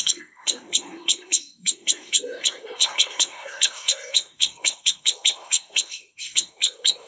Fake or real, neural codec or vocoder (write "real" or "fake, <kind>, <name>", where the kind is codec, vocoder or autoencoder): fake, codec, SNAC